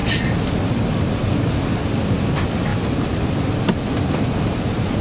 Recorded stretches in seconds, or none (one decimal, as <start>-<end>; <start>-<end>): 0.0-5.0